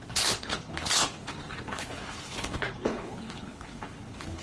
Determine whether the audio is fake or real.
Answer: fake